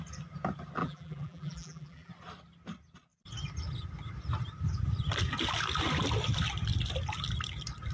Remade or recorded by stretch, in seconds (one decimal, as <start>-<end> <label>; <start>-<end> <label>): 0.0-0.8 recorded; 0.8-2.1 remade; 2.1-7.9 recorded